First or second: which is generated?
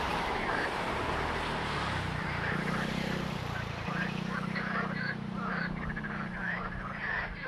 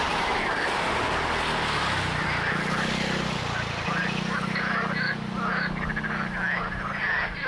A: first